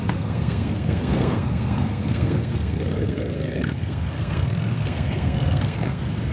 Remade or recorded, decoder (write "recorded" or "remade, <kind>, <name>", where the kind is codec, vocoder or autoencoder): remade, codec, SNAC